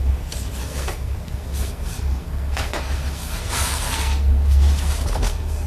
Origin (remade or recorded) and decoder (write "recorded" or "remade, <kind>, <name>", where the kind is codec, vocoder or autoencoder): remade, codec, SNAC